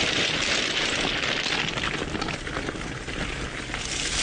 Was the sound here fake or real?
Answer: real